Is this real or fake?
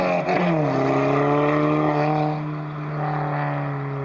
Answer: real